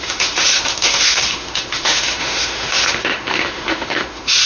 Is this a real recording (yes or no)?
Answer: no